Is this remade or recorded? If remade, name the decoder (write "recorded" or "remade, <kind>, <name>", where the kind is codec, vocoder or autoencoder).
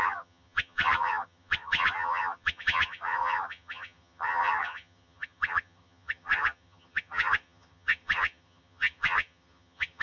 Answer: remade, vocoder, HiFi-GAN